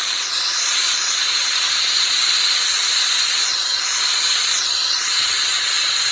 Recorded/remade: remade